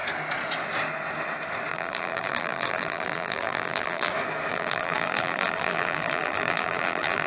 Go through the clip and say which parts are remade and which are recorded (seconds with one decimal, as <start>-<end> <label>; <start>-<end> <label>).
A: 0.0-1.7 recorded; 1.7-4.1 remade; 4.1-4.5 recorded; 4.5-7.3 remade